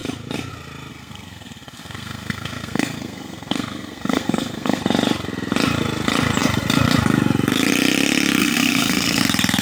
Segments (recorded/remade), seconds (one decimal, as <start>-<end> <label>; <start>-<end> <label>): 0.0-0.9 recorded; 0.9-4.8 remade; 4.8-8.4 recorded; 8.4-9.2 remade; 9.2-9.6 recorded